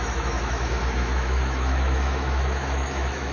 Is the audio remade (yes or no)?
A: yes